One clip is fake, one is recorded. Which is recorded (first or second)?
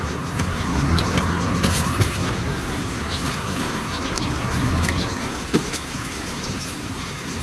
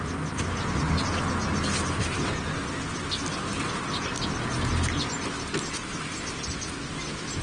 second